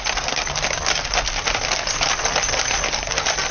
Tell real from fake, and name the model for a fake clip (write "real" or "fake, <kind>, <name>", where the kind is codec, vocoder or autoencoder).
real